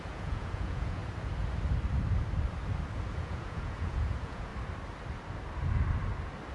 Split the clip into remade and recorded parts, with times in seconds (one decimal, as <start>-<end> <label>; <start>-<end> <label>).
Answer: 0.0-1.0 remade; 1.0-3.2 recorded; 3.2-4.5 remade; 4.5-6.5 recorded